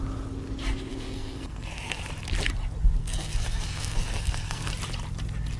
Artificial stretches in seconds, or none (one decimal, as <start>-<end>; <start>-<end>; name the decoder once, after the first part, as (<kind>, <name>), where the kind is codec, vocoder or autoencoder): 0.9-2.0 (codec, SNAC); 3.0-4.7

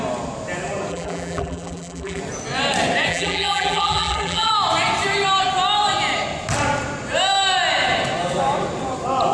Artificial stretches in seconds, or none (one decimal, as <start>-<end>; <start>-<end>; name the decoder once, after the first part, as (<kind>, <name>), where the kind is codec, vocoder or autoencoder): 0.9-2.2 (vocoder, BigVGAN v2); 3.1-4.5

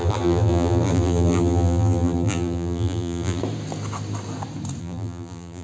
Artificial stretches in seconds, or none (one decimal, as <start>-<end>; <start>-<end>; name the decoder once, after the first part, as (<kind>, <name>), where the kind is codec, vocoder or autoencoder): 0.0-3.4 (vocoder, BigVGAN v2); 4.8-5.6

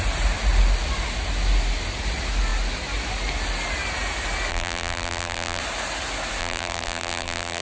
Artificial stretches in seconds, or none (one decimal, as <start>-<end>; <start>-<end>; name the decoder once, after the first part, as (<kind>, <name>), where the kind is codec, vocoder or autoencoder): 4.5-5.6 (vocoder, BigVGAN v2); 6.4-7.6

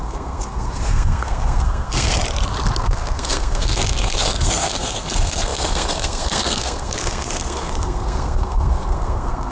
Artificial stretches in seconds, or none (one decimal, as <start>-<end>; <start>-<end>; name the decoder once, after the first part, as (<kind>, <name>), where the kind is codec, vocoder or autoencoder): 0.0-2.2 (codec, SNAC); 2.8-9.5

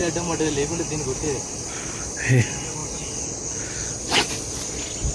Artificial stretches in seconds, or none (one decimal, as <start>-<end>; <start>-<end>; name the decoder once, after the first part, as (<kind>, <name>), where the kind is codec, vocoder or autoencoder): none

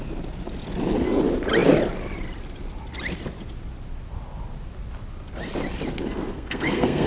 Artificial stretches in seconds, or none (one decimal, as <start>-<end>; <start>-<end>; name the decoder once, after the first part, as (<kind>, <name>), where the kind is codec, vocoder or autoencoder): 6.3-7.1 (codec, SNAC)

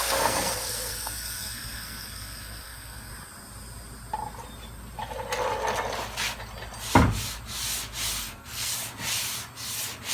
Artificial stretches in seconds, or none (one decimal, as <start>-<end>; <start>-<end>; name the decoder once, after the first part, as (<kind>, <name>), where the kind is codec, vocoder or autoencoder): 0.0-3.1 (codec, SNAC); 8.2-8.7